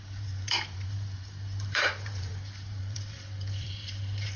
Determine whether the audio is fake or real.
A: fake